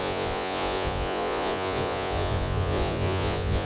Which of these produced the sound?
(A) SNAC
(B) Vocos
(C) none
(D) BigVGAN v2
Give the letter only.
B